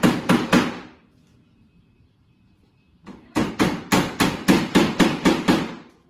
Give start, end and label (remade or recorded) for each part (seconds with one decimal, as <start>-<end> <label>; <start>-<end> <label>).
0.0-1.3 recorded; 1.3-3.5 remade; 3.5-5.1 recorded; 5.1-6.1 remade